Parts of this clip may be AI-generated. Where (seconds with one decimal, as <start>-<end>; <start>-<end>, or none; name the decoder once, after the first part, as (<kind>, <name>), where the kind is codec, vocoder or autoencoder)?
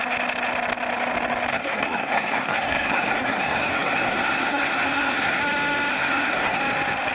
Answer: 1.5-5.4 (codec, SNAC); 5.9-6.6